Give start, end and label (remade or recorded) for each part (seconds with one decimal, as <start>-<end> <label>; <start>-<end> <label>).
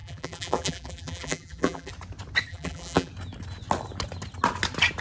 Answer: 0.0-1.9 remade; 1.9-2.5 recorded; 2.5-3.1 remade; 3.1-5.0 recorded